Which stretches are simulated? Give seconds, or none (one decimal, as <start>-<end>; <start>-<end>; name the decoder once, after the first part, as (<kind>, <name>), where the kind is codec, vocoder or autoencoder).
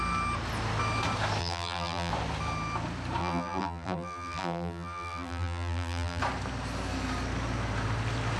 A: 1.4-2.1 (vocoder, BigVGAN v2); 3.2-6.2